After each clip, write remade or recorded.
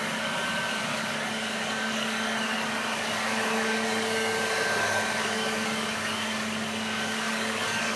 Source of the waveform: remade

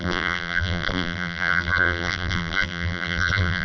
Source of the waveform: remade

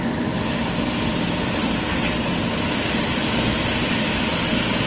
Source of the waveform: recorded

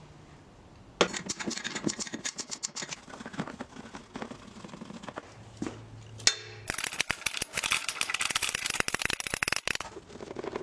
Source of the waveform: recorded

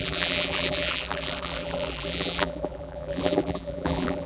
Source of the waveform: remade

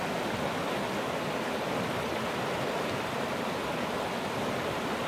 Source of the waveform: recorded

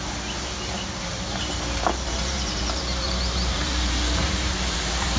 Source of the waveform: remade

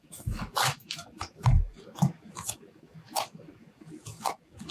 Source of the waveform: remade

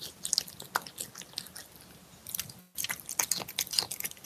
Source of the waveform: recorded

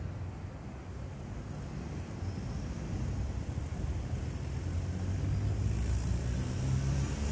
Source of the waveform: recorded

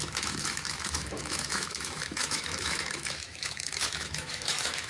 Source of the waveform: remade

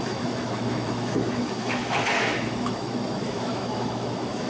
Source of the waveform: remade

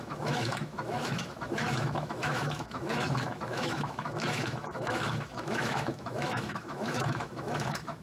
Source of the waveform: remade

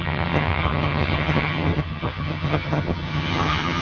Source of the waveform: remade